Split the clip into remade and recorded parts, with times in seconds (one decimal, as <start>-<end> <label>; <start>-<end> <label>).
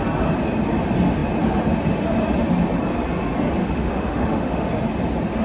0.0-3.6 recorded; 3.6-4.7 remade; 4.7-5.4 recorded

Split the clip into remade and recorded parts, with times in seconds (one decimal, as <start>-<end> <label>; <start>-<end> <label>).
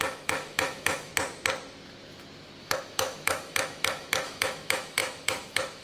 0.0-1.1 remade; 1.1-2.6 recorded; 2.6-5.8 remade